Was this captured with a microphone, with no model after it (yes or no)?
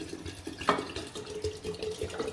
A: yes